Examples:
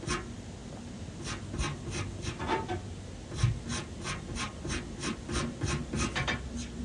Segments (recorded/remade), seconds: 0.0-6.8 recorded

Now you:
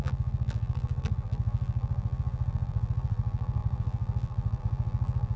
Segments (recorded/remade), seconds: 0.0-5.4 remade

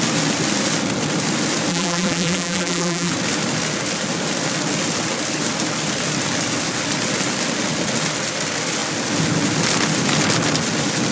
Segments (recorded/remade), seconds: 0.0-1.7 recorded; 1.7-3.1 remade; 3.1-11.1 recorded

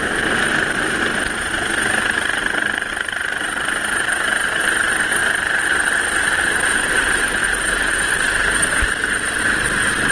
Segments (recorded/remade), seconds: 0.0-2.4 recorded; 2.4-2.9 remade; 2.9-5.2 recorded; 5.2-5.7 remade; 5.7-7.4 recorded; 7.4-9.4 remade; 9.4-10.1 recorded

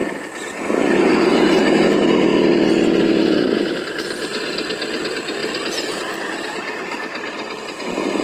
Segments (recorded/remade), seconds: 0.0-0.9 recorded; 0.9-2.3 remade; 2.3-3.4 recorded; 3.4-4.3 remade; 4.3-5.0 recorded; 5.0-8.2 remade